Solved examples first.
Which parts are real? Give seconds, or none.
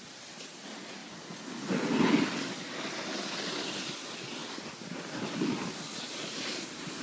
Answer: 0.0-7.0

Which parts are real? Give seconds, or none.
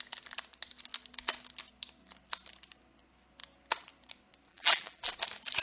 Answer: 0.0-4.5; 5.1-5.6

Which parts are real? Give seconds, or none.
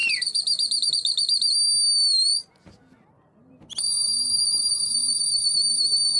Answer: 0.9-6.2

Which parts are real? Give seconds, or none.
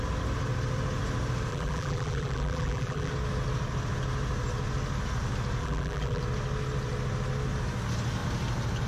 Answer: 0.0-1.5; 3.1-5.6; 6.2-8.9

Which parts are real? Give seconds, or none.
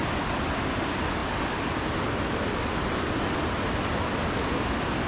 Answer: 1.2-4.3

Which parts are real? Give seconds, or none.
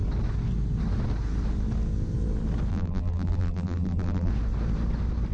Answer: 0.0-2.7; 4.3-5.3